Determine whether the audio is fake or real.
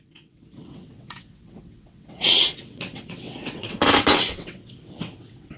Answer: fake